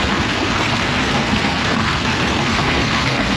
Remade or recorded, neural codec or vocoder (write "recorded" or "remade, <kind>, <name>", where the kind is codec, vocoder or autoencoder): remade, codec, SNAC